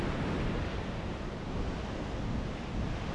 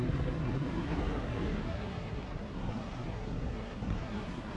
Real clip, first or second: first